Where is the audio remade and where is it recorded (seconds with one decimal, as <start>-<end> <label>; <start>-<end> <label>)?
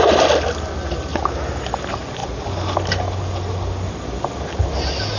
0.0-5.2 recorded